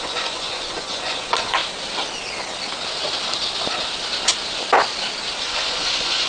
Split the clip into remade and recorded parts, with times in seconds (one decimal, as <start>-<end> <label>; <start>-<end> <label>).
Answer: 0.0-1.6 remade; 1.6-5.4 recorded; 5.4-6.3 remade